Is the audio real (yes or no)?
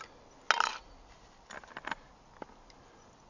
yes